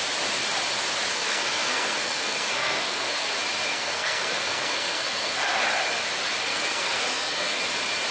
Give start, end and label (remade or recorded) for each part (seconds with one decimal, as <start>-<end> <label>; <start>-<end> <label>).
0.0-1.1 recorded; 1.1-3.3 remade; 3.3-3.7 recorded; 3.7-5.6 remade; 5.6-6.5 recorded; 6.5-7.6 remade; 7.6-8.1 recorded